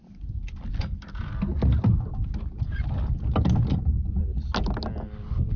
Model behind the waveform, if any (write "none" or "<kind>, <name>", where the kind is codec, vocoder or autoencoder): none